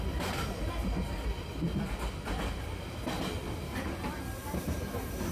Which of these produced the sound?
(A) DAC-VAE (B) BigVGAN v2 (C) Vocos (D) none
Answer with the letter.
D